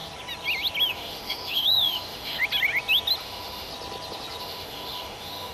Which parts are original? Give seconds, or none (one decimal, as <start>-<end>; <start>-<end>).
0.0-0.9; 2.4-3.2; 3.7-4.4